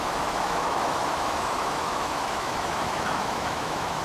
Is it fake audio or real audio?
fake